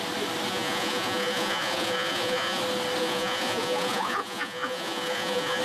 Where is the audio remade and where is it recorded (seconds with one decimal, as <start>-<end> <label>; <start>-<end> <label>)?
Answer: 0.0-0.5 recorded; 0.5-2.6 remade; 2.6-3.0 recorded; 3.0-5.6 remade